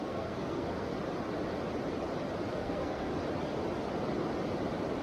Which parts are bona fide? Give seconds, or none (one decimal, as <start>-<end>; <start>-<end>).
0.9-2.5; 3.1-5.0